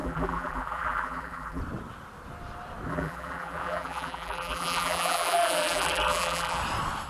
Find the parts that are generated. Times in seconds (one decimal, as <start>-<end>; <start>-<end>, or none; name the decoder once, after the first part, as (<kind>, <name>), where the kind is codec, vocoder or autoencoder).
0.0-1.6 (vocoder, BigVGAN v2); 2.9-6.6